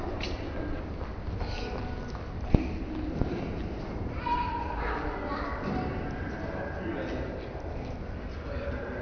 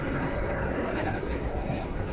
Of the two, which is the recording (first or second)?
first